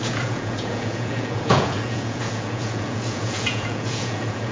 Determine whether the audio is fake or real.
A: fake